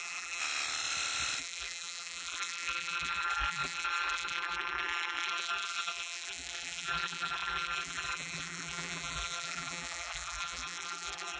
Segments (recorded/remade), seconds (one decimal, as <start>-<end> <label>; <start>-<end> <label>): 0.0-0.4 remade; 0.4-1.4 recorded; 1.4-11.4 remade